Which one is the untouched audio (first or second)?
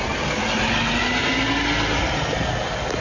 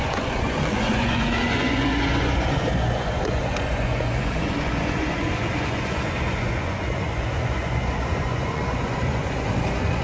first